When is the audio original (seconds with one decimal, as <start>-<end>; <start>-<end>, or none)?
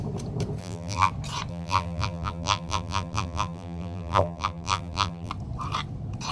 0.0-0.6; 1.1-1.5; 5.3-6.3